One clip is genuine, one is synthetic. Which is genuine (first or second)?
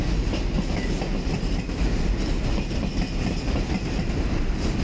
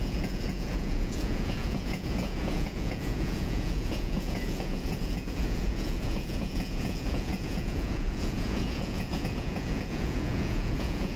first